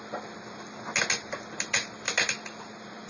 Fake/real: real